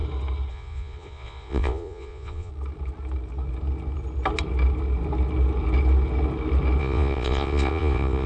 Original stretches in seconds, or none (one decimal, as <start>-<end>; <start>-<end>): 0.0-0.5; 2.5-6.8